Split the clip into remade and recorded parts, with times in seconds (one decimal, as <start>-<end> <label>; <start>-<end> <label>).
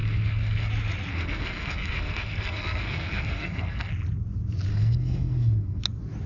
0.0-0.7 remade; 0.7-1.1 recorded; 1.1-3.9 remade; 3.9-4.7 recorded; 4.7-5.8 remade; 5.8-6.3 recorded